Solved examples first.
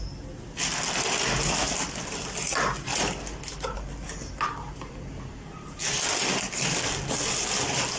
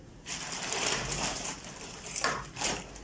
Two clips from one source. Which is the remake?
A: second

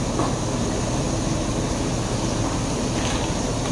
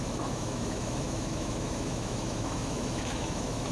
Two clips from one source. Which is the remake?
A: second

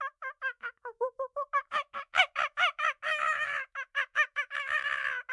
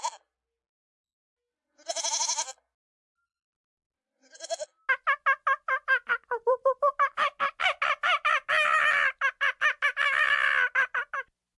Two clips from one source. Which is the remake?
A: first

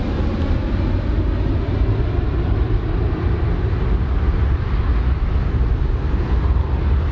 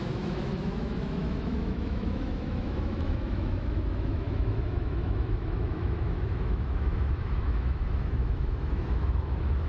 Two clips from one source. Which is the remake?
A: second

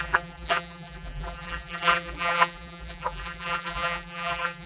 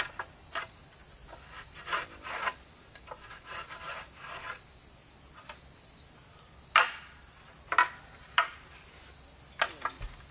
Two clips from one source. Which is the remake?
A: first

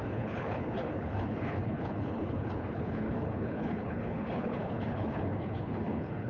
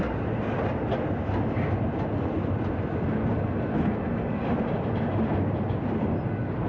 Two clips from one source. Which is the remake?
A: first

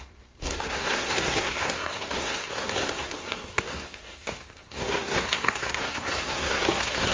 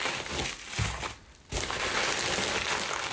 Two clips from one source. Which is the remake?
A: first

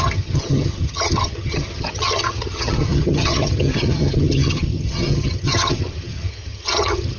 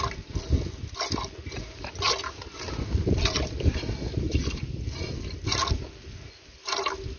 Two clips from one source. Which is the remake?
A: first